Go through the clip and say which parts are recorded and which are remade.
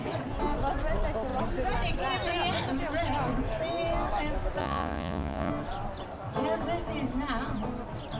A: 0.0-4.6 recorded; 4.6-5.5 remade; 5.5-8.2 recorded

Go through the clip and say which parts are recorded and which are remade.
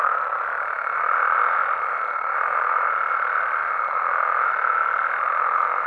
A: 0.0-5.9 recorded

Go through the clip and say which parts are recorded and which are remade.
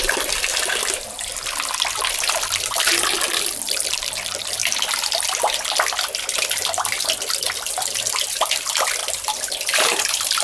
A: 0.0-0.5 remade; 0.5-1.9 recorded; 1.9-4.6 remade; 4.6-7.4 recorded; 7.4-9.0 remade; 9.0-9.6 recorded; 9.6-10.4 remade